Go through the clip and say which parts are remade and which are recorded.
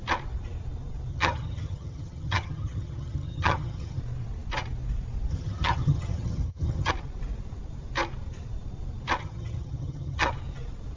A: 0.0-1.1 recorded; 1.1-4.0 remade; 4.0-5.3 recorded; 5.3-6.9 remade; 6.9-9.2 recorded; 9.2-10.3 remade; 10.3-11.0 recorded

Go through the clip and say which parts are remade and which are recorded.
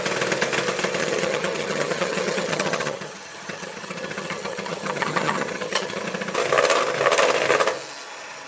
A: 0.0-1.0 recorded; 1.0-6.0 remade; 6.0-8.5 recorded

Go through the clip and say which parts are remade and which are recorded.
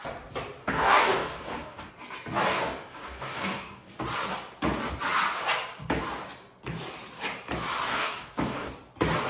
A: 0.0-0.6 recorded; 0.6-1.9 remade; 1.9-2.5 recorded; 2.5-3.9 remade; 3.9-7.9 recorded; 7.9-8.7 remade; 8.7-9.3 recorded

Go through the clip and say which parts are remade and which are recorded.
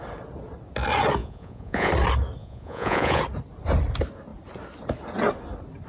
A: 0.0-1.2 recorded; 1.2-1.9 remade; 1.9-2.4 recorded; 2.4-3.2 remade; 3.2-5.9 recorded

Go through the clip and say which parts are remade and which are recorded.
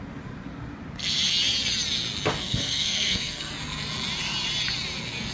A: 0.0-2.4 recorded; 2.4-3.5 remade; 3.5-5.3 recorded